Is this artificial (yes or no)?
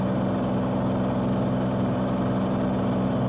no